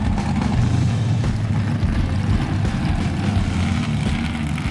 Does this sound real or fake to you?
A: real